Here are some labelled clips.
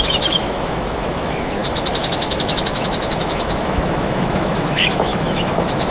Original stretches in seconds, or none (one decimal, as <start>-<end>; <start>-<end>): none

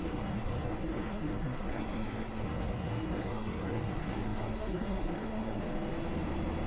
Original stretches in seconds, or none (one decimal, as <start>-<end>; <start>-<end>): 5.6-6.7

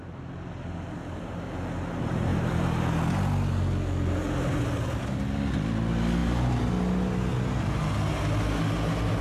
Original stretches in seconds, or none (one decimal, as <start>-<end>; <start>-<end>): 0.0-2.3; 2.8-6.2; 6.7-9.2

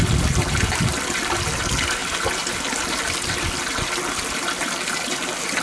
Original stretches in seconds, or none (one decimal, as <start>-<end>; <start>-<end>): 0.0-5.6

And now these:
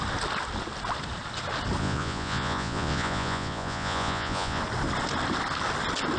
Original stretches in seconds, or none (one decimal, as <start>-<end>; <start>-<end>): 0.0-1.8; 4.6-6.2

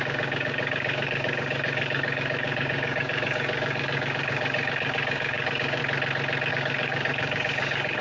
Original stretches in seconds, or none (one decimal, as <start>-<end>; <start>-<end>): 5.8-6.5

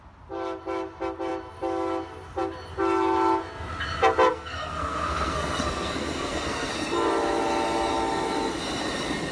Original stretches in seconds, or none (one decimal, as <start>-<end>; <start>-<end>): 0.0-4.3; 6.7-9.3

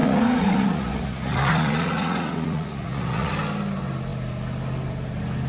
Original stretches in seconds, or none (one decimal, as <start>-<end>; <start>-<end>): 3.3-5.5